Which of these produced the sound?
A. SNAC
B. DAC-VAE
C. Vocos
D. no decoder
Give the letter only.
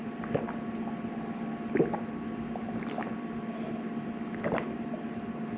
D